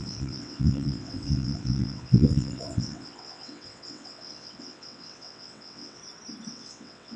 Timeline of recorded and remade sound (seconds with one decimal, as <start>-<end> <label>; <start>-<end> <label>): 0.0-6.0 remade; 6.0-6.5 recorded; 6.5-7.2 remade